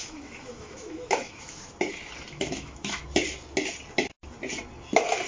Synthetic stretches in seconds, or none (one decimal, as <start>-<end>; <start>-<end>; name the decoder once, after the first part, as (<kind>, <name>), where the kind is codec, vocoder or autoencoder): 0.0-1.6 (autoencoder, DAC-VAE); 2.3-3.0